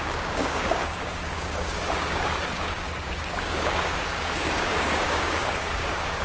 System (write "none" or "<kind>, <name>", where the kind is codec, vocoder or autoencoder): codec, DAC